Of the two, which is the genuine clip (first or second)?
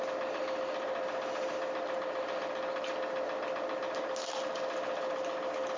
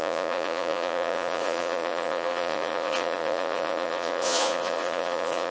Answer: first